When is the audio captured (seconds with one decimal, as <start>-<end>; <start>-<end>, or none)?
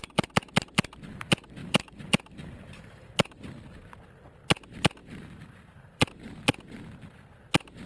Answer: 0.0-1.6; 3.1-5.0; 6.1-7.9